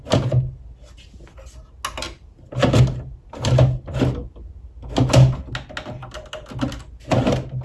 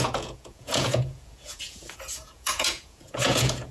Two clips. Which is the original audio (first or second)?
first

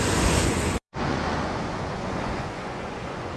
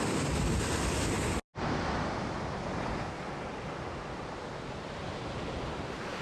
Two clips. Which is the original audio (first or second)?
second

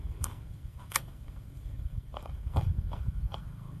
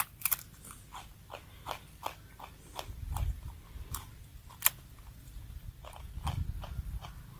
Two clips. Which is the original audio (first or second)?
second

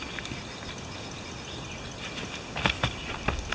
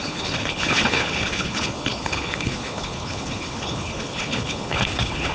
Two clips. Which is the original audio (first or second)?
first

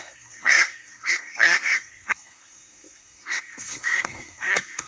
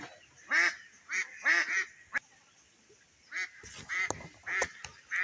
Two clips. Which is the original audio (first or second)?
second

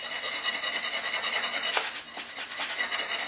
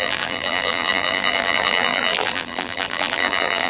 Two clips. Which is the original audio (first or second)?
first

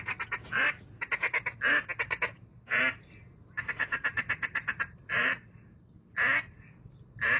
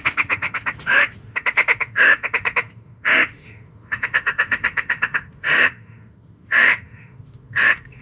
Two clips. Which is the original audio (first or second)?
first